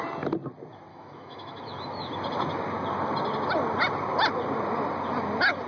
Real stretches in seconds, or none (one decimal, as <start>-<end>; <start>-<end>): 0.0-0.9; 2.1-5.7